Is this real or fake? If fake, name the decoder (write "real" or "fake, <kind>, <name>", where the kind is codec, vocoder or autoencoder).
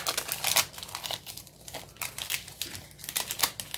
real